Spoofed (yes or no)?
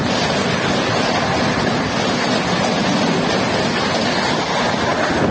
no